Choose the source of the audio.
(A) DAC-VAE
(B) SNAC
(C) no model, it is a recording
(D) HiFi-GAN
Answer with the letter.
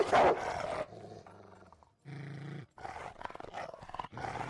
C